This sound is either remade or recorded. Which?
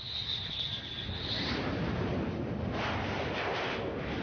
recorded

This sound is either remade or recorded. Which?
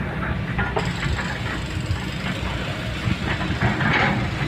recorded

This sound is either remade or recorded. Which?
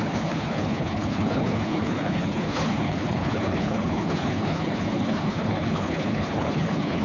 remade